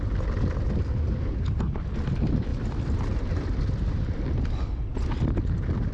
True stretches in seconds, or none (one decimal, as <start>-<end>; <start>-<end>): 0.0-2.5; 3.3-5.9